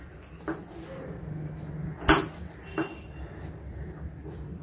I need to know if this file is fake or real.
real